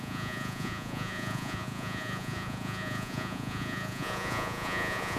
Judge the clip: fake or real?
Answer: fake